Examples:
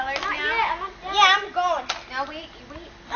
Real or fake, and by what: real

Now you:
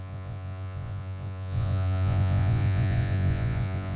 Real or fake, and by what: fake, vocoder, Vocos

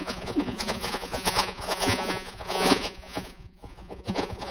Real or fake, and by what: fake, vocoder, Vocos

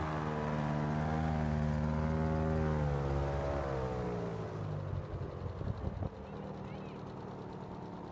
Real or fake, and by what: real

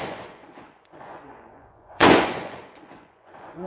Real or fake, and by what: fake, vocoder, Vocos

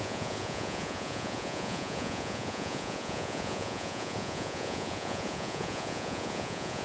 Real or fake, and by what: fake, vocoder, Vocos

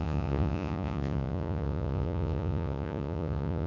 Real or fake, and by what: fake, vocoder, Vocos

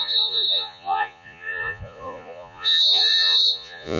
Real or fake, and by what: fake, vocoder, Vocos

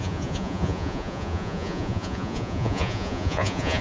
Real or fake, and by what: fake, vocoder, Vocos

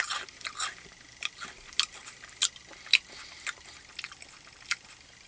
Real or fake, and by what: real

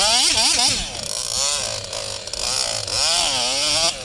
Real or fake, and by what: real